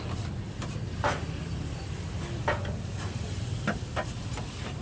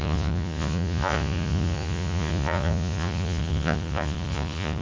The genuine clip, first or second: first